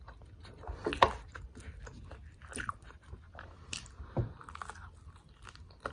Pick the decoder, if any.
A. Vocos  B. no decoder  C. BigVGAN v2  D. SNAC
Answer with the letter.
B